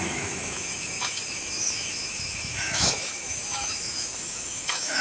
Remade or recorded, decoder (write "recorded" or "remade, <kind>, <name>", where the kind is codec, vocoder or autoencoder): remade, autoencoder, DAC-VAE